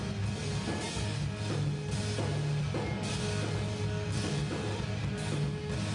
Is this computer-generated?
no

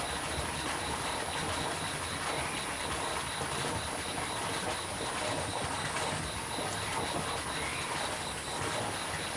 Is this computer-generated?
no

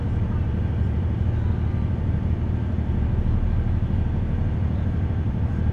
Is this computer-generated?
no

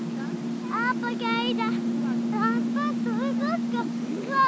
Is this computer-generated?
no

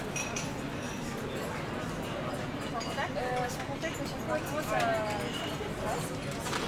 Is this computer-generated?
no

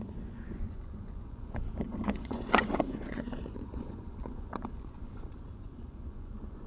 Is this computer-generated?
yes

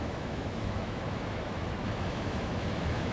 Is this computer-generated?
yes